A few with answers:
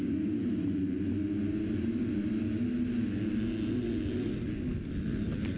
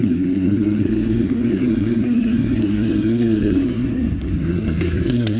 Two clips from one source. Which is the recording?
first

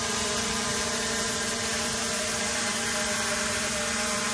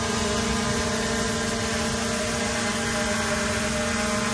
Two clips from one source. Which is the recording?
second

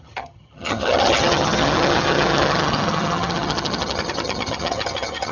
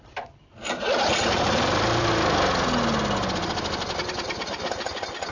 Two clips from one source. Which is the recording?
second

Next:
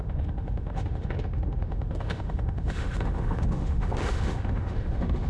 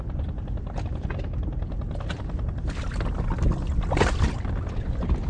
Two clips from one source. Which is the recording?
second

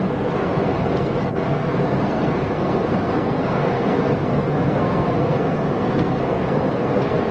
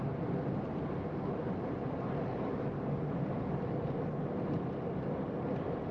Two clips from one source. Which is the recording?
second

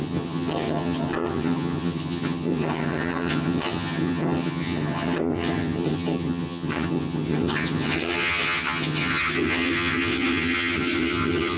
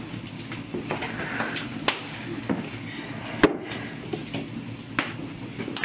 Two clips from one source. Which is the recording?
second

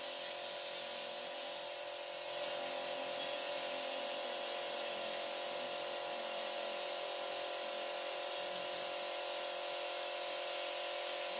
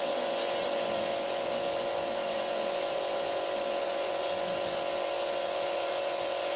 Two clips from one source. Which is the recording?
first